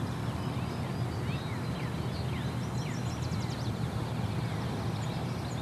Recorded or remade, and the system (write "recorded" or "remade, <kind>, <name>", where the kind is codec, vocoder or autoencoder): recorded